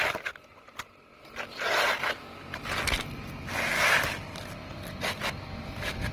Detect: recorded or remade recorded